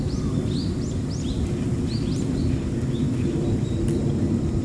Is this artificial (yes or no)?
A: no